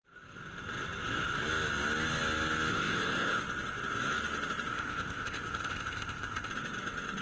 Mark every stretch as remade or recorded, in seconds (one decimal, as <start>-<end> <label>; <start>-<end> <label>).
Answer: 0.0-2.7 recorded; 2.7-3.4 remade; 3.4-4.7 recorded; 4.7-6.5 remade; 6.5-7.2 recorded